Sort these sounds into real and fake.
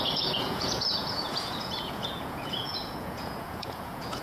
fake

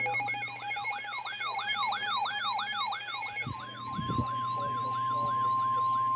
real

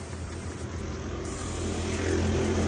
real